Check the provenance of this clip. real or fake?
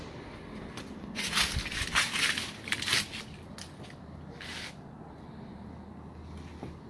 real